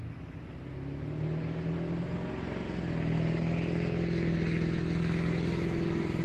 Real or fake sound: real